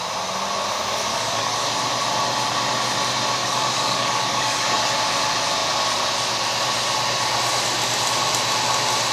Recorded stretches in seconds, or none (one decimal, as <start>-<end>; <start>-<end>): 0.0-1.1; 1.7-3.4; 4.9-9.1